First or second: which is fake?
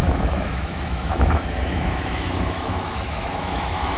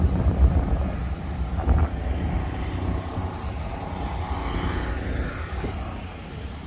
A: first